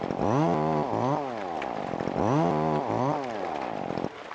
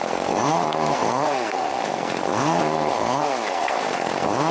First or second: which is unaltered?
first